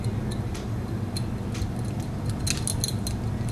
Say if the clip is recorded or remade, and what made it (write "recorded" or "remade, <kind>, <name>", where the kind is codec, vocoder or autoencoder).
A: recorded